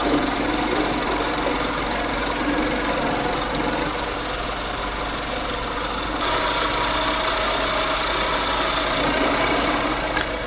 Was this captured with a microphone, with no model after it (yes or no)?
yes